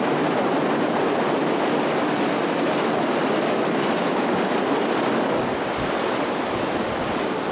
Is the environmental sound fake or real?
real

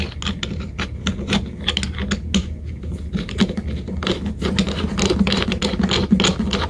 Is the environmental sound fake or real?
real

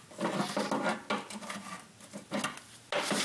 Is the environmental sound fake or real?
real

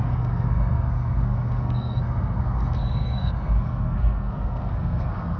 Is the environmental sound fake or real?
fake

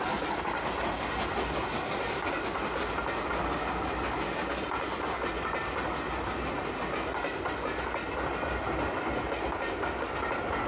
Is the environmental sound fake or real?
real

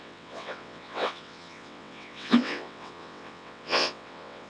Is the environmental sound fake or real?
fake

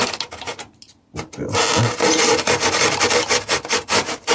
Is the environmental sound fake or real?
real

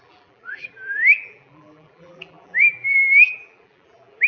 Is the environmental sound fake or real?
fake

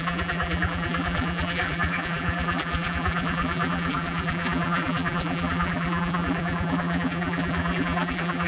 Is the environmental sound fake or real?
fake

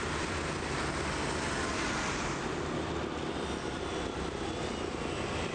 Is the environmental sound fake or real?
real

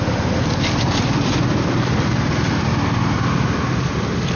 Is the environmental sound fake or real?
fake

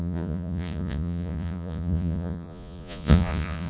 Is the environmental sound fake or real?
fake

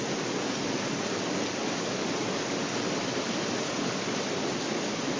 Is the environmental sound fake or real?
real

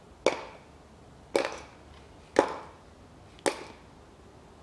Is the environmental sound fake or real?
real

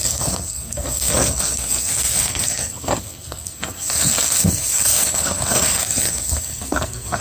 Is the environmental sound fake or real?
fake